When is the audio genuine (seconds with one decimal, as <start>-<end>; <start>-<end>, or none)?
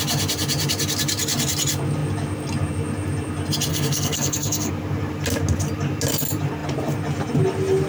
0.0-3.7; 4.7-7.9